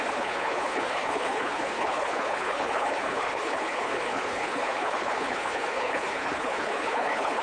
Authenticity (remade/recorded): remade